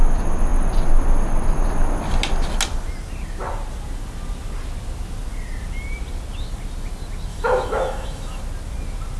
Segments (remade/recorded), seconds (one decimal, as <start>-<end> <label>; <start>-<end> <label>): 0.0-7.3 recorded; 7.3-8.4 remade; 8.4-9.2 recorded